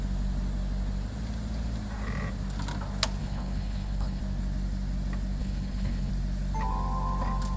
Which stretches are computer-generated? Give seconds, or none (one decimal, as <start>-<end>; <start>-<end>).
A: 3.2-4.2; 5.4-6.1